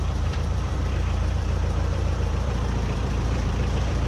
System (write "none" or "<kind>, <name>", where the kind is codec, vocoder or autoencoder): vocoder, BigVGAN v2